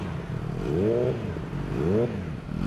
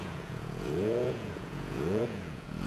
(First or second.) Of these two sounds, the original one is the first